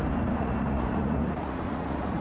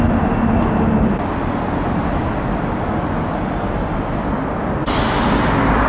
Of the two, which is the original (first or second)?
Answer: second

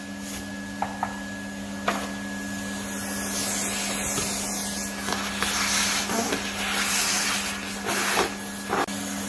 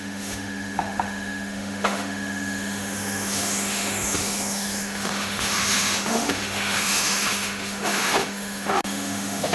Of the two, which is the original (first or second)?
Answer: first